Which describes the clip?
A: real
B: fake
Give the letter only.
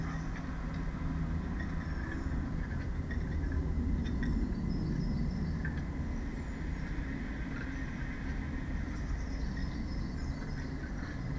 A